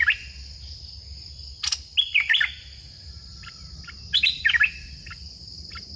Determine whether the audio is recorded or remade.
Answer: recorded